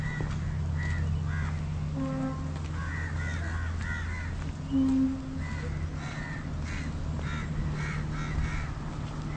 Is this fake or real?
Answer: real